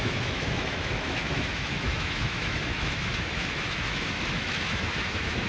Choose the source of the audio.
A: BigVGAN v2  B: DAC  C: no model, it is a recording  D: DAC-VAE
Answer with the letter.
D